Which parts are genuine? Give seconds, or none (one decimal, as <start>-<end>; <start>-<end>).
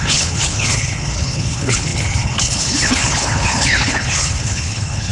none